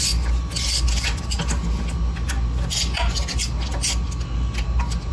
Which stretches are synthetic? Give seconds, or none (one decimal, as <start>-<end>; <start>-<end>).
none